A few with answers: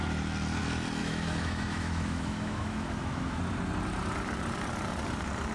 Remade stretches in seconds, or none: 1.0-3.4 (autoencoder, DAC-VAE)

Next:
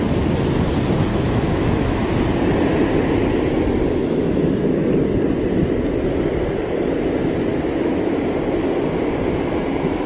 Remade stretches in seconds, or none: 1.1-2.2 (autoencoder, DAC-VAE); 4.0-4.9; 7.5-8.1

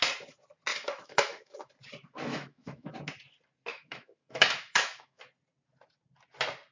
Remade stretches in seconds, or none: 0.7-1.7 (autoencoder, DAC-VAE); 2.3-2.9; 3.7-5.2

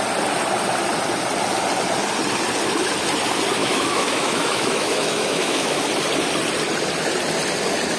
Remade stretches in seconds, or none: 3.6-5.8 (autoencoder, DAC-VAE)

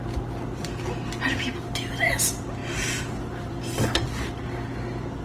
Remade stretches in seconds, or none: none